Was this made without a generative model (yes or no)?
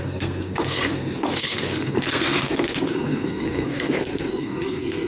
no